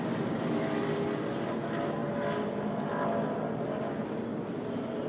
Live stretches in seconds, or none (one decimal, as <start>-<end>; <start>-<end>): 0.0-5.1